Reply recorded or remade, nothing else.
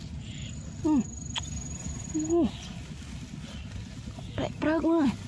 recorded